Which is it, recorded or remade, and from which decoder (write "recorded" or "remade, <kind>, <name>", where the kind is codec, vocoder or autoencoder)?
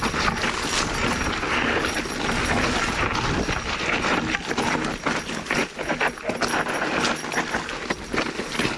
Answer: recorded